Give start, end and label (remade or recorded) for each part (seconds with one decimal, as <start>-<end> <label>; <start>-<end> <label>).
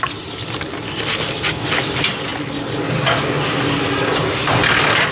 0.0-5.1 recorded